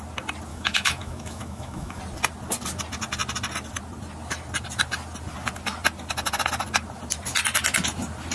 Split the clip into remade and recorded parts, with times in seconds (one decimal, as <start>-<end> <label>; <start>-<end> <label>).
0.0-0.5 recorded; 0.5-2.0 remade; 2.0-8.3 recorded